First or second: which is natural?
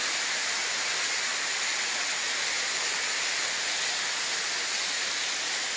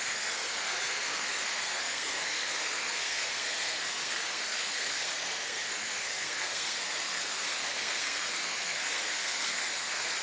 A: first